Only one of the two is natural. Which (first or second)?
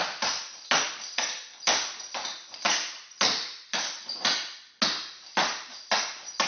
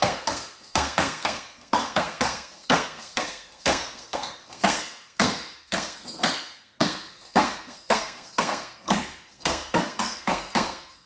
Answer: first